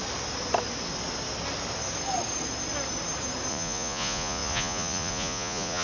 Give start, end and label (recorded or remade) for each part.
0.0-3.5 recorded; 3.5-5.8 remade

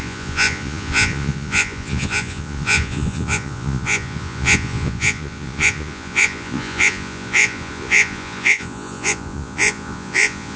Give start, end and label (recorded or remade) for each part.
0.0-10.6 remade

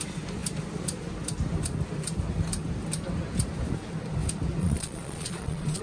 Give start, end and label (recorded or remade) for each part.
0.0-4.6 recorded; 4.6-5.8 remade

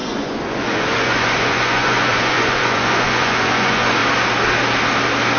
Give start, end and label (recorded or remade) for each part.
0.0-4.0 remade; 4.0-5.4 recorded

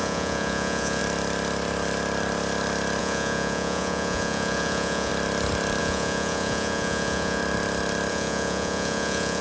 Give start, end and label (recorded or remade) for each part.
0.0-1.0 remade; 1.0-3.0 recorded; 3.0-5.1 remade; 5.1-5.8 recorded; 5.8-7.4 remade; 7.4-8.1 recorded; 8.1-9.4 remade

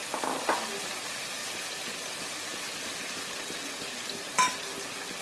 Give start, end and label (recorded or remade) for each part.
0.0-5.2 recorded